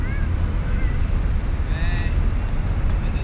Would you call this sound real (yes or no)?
yes